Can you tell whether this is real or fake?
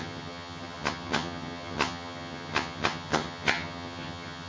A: fake